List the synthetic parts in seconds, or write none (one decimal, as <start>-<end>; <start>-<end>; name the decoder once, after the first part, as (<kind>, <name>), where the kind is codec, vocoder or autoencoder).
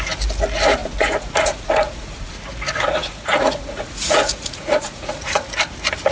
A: 0.8-2.3 (vocoder, Vocos); 3.0-5.4